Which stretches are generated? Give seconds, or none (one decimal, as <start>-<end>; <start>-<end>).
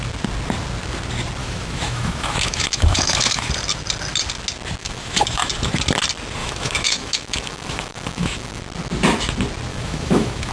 1.4-3.5; 4.8-5.5; 6.4-8.6; 9.7-10.5